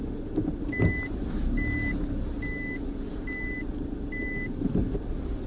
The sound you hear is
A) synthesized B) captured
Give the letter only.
B